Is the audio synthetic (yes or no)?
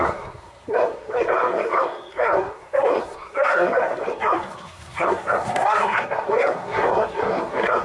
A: yes